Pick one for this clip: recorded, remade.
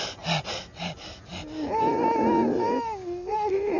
recorded